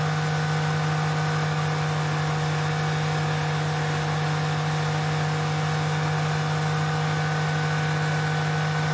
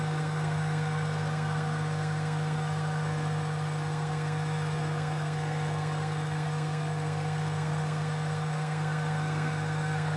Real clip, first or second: first